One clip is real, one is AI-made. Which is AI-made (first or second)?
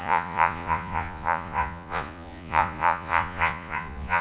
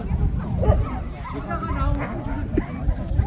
first